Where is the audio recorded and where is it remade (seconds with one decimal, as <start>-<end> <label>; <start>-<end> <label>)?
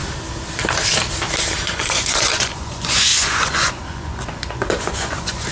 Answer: 0.0-1.6 recorded; 1.6-5.5 remade